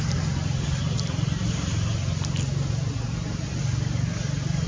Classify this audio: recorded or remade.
recorded